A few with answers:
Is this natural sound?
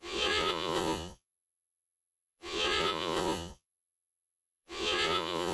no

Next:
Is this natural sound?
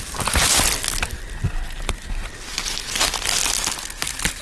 yes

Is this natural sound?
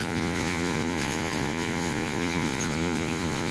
no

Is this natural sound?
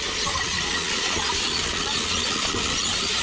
no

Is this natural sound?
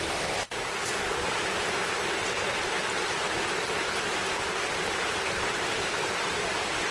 yes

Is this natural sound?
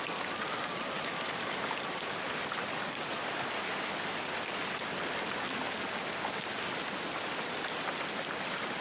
yes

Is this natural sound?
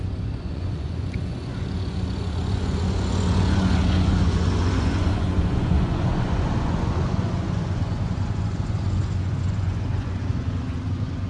no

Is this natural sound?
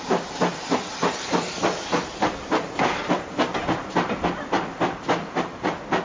yes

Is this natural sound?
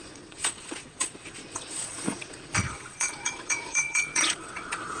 no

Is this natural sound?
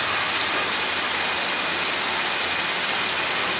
yes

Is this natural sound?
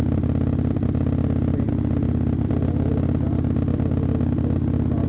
yes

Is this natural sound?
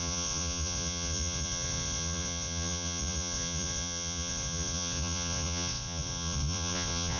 no